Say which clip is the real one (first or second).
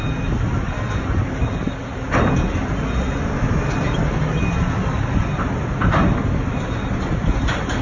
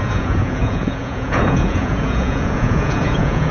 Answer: first